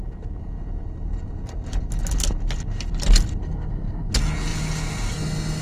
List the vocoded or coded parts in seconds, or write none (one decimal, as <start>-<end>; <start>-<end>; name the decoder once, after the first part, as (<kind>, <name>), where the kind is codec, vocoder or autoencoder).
3.4-4.1 (codec, SNAC)

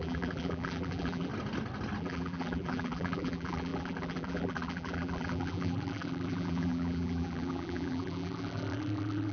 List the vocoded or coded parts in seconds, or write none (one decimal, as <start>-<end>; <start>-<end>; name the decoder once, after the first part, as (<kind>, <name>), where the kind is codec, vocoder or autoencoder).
0.0-1.3 (vocoder, BigVGAN v2); 2.0-9.3

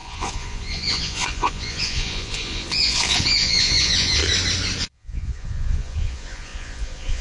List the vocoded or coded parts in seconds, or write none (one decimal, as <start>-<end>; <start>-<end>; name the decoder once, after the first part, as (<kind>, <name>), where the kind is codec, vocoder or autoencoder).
0.0-4.2 (vocoder, Vocos); 4.8-7.2